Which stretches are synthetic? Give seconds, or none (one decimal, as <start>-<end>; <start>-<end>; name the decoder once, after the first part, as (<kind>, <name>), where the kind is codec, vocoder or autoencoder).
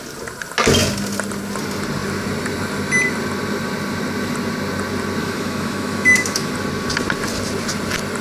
5.2-6.5 (autoencoder, DAC-VAE)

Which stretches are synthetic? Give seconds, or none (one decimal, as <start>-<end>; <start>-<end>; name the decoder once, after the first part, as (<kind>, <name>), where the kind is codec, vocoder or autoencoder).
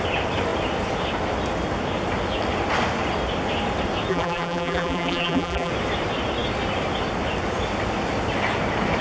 4.1-5.7 (vocoder, BigVGAN v2)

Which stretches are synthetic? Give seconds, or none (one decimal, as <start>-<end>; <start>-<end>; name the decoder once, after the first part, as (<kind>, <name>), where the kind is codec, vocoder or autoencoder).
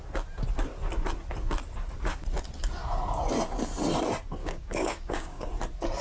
4.4-5.5 (codec, DAC)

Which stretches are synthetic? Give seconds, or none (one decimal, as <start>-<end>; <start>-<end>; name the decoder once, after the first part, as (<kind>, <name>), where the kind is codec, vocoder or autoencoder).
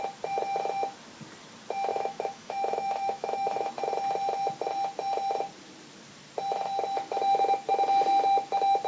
1.9-3.7 (autoencoder, DAC-VAE)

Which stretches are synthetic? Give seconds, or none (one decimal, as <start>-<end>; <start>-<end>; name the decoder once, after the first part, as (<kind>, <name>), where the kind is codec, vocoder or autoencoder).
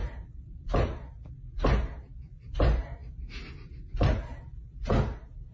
0.0-1.3 (vocoder, BigVGAN v2)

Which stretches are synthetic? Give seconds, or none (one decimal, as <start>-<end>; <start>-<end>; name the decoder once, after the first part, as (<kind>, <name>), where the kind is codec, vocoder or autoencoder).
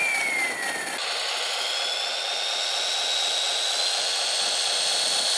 none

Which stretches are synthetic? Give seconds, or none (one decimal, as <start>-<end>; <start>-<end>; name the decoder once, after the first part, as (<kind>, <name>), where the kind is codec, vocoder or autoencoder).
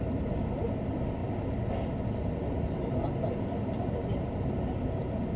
none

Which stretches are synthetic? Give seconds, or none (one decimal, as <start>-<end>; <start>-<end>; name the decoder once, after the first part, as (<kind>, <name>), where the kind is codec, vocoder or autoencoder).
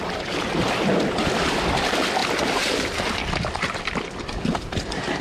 0.0-2.2 (vocoder, BigVGAN v2); 3.3-5.2